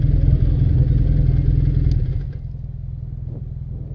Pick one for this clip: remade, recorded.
recorded